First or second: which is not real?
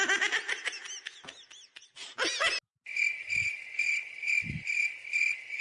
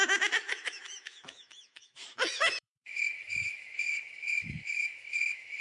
second